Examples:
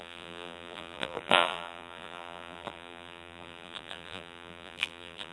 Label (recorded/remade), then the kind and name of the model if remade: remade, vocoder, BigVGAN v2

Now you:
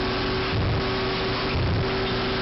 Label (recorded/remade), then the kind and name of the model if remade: recorded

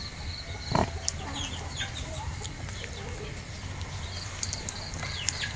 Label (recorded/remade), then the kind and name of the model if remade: recorded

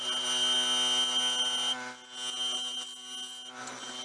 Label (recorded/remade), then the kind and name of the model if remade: recorded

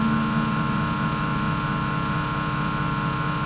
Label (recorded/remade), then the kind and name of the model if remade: remade, autoencoder, DAC-VAE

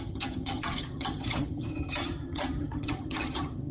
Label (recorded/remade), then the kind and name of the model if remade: remade, vocoder, HiFi-GAN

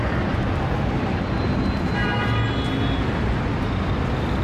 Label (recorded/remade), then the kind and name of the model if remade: recorded